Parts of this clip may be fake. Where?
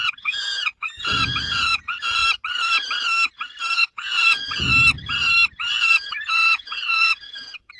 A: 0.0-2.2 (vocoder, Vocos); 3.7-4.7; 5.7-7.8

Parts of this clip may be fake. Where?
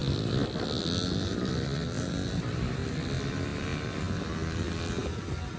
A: none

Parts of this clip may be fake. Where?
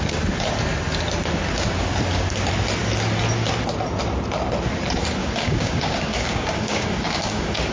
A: 5.2-7.7 (codec, DAC)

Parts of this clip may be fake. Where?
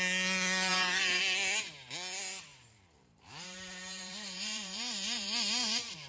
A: 0.7-1.2 (vocoder, BigVGAN v2); 2.5-6.1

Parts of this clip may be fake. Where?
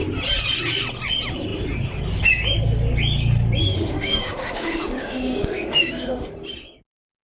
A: 3.6-6.3 (autoencoder, DAC-VAE)